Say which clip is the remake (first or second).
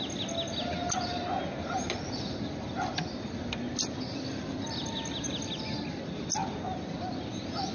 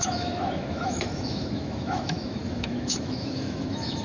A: second